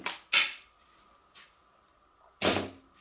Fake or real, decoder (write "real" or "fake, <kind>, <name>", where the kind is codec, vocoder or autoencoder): real